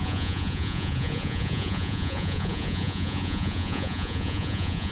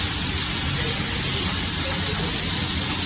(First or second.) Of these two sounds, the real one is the second